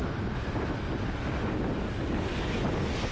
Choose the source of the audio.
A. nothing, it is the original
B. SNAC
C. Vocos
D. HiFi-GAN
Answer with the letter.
A